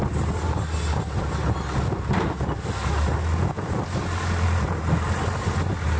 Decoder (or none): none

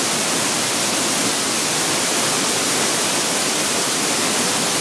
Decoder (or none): none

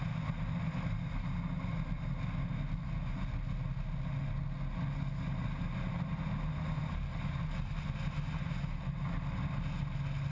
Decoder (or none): none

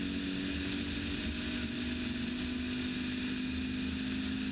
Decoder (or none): none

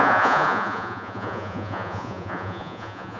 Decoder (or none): vocoder, Vocos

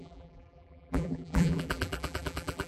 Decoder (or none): vocoder, BigVGAN v2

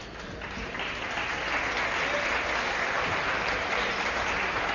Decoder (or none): none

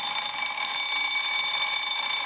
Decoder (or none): none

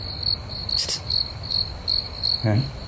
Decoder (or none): none